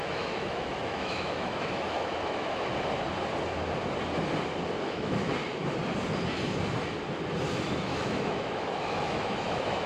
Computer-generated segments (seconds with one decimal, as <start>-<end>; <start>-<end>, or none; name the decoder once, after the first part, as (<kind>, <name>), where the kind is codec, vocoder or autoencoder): 0.0-2.7 (autoencoder, DAC-VAE); 4.8-5.3; 7.8-9.9